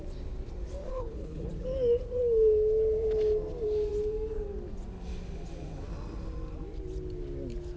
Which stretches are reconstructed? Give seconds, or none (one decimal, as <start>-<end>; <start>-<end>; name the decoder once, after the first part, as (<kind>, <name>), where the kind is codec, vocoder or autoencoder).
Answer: 0.9-1.5 (codec, HILCodec)